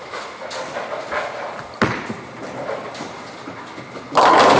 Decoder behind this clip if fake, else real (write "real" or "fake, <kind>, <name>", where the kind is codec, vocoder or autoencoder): real